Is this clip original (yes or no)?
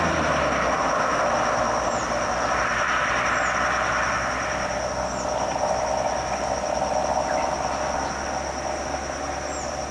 yes